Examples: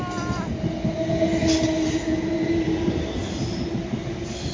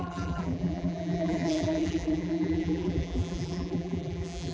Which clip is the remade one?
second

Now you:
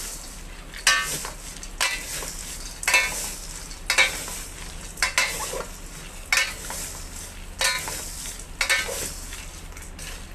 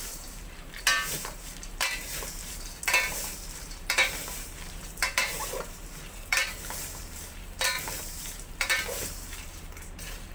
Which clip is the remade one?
second